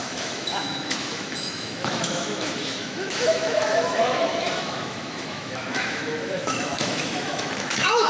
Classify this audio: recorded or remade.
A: remade